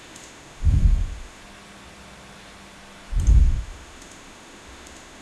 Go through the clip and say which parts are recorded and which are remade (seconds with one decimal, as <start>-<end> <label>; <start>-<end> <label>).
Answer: 0.0-1.4 remade; 1.4-3.4 recorded; 3.4-5.2 remade